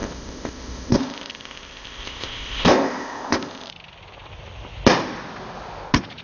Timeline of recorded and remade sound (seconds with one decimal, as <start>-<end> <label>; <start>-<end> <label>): 0.0-3.7 remade; 3.7-6.2 recorded